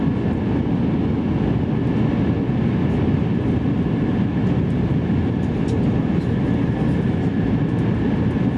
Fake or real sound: real